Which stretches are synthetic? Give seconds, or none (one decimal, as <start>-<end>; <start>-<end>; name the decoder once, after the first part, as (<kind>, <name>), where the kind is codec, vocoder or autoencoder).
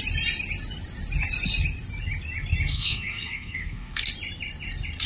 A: 2.7-4.0 (codec, SNAC)